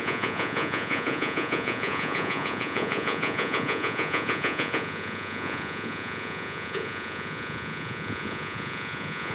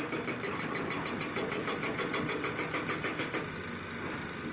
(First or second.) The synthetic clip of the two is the first